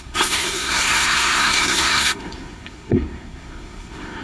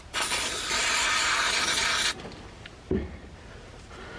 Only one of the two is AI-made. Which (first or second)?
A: first